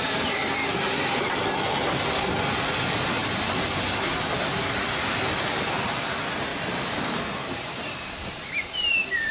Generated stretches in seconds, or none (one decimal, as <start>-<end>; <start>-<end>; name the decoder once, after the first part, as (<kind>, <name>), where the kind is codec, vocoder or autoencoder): 0.6-1.3 (vocoder, BigVGAN v2); 6.5-8.6